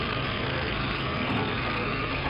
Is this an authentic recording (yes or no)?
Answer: no